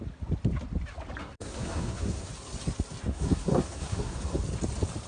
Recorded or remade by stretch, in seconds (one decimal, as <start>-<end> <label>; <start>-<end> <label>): 0.0-1.2 recorded; 1.2-2.3 remade; 2.3-3.1 recorded; 3.1-4.4 remade; 4.4-5.1 recorded